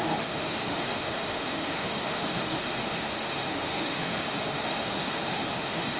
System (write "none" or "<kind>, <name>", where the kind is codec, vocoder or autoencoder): autoencoder, DAC-VAE